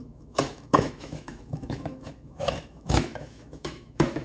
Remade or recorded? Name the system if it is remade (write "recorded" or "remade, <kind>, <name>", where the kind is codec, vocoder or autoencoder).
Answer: remade, autoencoder, DAC-VAE